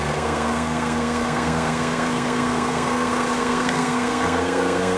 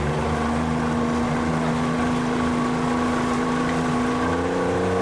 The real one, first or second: second